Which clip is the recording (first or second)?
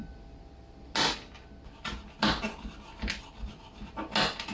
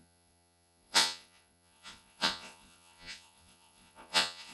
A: first